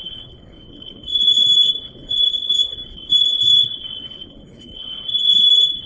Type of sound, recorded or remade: remade